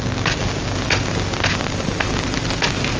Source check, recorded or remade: recorded